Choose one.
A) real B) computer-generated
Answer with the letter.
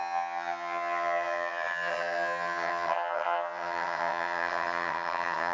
B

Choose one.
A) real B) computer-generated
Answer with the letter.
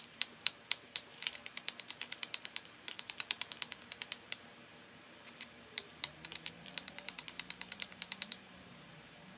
B